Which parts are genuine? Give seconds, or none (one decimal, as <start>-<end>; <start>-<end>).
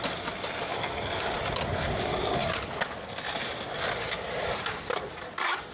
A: 0.0-5.7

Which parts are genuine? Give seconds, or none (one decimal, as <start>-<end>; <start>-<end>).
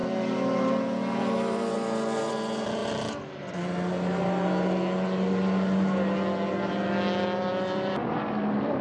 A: 2.3-8.8